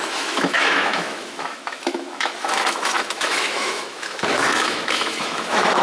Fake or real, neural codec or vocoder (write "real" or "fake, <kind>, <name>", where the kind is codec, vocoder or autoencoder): fake, autoencoder, DAC-VAE